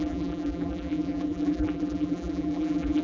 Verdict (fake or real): fake